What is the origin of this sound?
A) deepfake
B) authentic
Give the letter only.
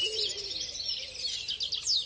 B